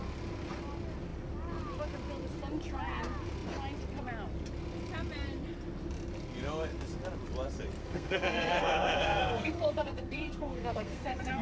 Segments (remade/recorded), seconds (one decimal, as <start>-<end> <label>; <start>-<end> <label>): 0.0-7.8 recorded; 7.8-11.4 remade